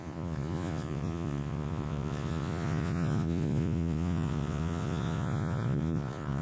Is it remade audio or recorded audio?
remade